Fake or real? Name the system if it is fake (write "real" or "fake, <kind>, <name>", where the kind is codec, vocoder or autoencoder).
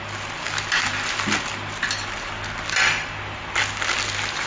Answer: real